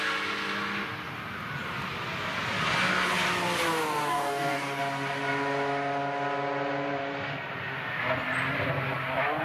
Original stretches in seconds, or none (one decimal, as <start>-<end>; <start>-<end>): 0.0-4.0; 4.8-9.4